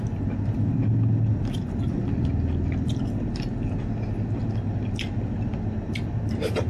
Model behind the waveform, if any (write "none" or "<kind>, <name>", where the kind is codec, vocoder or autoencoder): none